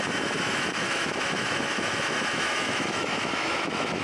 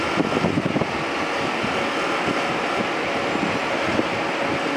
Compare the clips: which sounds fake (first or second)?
first